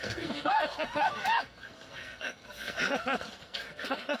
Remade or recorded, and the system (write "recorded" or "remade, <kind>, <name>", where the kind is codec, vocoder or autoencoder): remade, codec, SNAC